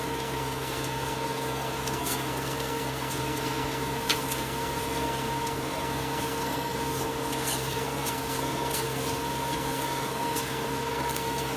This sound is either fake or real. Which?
fake